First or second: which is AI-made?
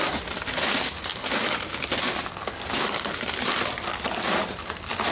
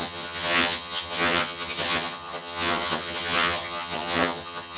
second